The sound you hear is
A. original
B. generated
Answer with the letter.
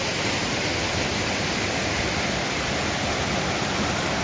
A